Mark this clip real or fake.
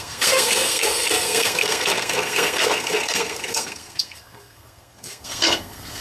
fake